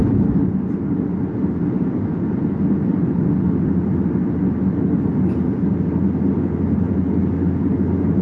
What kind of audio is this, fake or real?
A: real